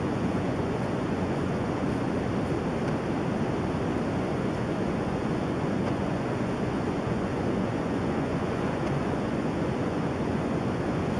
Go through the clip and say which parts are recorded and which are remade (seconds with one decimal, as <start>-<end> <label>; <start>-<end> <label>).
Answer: 0.0-2.1 remade; 2.1-4.2 recorded; 4.2-11.2 remade